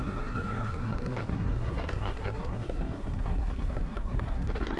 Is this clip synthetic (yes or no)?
yes